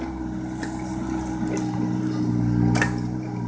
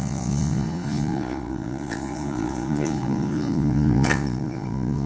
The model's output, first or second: second